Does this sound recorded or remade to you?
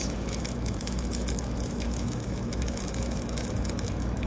remade